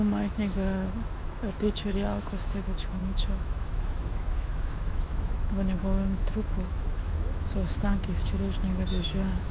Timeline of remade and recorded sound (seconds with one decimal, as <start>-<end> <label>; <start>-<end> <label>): 0.0-9.5 remade